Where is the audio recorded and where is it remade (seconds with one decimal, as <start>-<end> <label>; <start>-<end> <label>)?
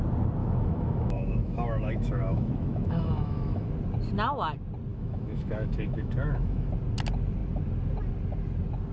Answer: 0.0-0.4 recorded; 0.4-3.7 remade; 3.7-4.9 recorded; 4.9-6.7 remade; 6.7-8.9 recorded